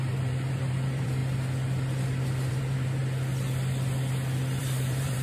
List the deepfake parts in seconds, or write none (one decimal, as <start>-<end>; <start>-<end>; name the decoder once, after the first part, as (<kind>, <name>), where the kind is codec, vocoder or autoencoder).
0.0-1.2 (vocoder, BigVGAN v2); 2.5-3.0; 4.6-5.2